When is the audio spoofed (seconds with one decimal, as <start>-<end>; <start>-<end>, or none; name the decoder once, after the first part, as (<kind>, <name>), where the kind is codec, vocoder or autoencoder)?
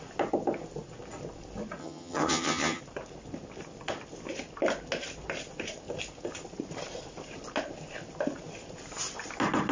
1.8-2.8 (vocoder, HiFi-GAN)